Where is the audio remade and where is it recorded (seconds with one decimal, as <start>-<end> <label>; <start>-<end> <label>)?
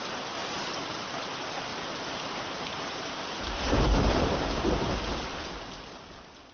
0.0-0.4 recorded; 0.4-1.0 remade; 1.0-1.7 recorded; 1.7-4.8 remade; 4.8-6.5 recorded